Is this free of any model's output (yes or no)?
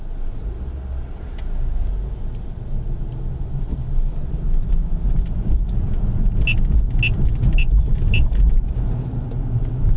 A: yes